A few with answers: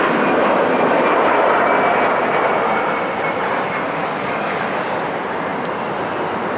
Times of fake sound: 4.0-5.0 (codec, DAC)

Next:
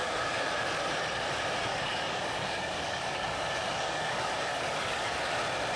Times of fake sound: 0.0-0.5 (codec, DAC); 1.7-5.2